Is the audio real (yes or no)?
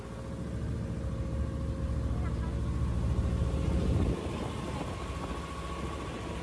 yes